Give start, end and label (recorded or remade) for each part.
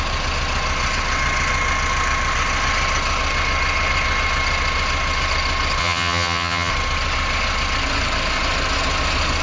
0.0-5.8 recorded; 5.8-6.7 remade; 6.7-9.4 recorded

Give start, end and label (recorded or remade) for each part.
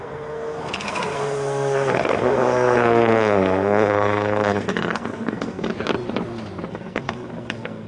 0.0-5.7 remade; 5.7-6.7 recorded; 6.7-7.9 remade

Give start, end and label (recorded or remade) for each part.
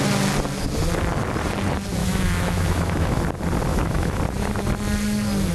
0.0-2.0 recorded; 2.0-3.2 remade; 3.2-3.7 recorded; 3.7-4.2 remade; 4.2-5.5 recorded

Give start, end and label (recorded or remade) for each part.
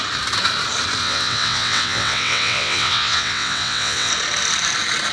0.0-1.0 recorded; 1.0-4.1 remade; 4.1-5.1 recorded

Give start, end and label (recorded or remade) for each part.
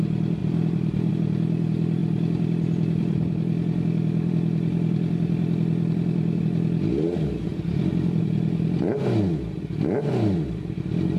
0.0-0.4 recorded; 0.4-1.1 remade; 1.1-2.0 recorded; 2.0-6.4 remade; 6.4-7.5 recorded; 7.5-8.2 remade; 8.2-11.2 recorded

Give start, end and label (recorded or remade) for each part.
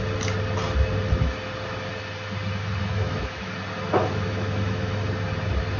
0.0-2.8 recorded; 2.8-3.5 remade; 3.5-4.0 recorded; 4.0-5.1 remade; 5.1-5.8 recorded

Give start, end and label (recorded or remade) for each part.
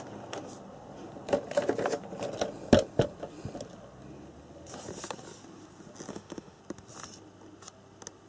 0.0-6.1 recorded; 6.1-6.6 remade; 6.6-8.3 recorded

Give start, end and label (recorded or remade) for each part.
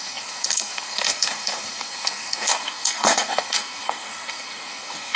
0.0-5.2 remade